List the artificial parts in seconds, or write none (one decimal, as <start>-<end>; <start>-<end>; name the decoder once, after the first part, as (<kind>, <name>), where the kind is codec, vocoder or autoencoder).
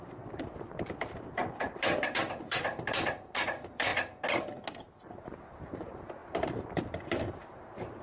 0.0-3.9 (vocoder, BigVGAN v2); 4.8-8.0